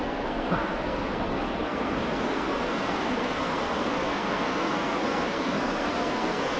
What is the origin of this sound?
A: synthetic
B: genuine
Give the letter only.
A